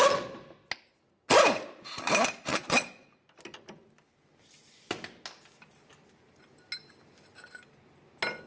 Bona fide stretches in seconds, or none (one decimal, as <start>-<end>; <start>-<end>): 0.0-2.5; 3.1-8.5